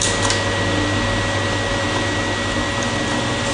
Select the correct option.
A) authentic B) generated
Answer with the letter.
A